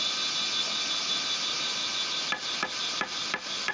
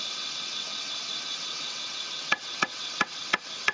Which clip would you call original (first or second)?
first